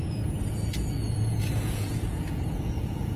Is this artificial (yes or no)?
yes